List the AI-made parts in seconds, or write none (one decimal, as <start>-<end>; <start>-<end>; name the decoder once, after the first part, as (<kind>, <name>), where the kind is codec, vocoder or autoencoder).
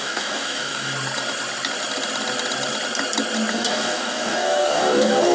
0.0-0.9 (codec, DAC); 3.5-5.3